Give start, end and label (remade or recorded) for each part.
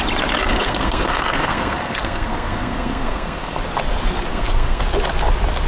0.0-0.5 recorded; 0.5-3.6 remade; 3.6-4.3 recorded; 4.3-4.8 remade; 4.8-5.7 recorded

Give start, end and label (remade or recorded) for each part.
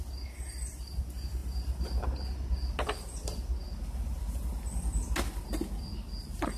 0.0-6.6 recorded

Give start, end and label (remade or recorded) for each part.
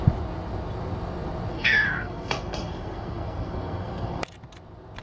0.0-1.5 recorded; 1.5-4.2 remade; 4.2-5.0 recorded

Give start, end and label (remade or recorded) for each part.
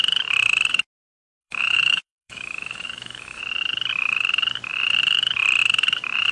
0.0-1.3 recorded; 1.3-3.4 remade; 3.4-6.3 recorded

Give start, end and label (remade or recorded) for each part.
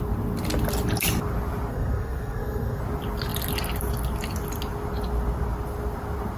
0.0-1.7 recorded; 1.7-2.8 remade; 2.8-6.4 recorded